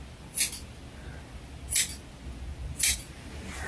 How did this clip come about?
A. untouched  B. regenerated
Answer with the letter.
A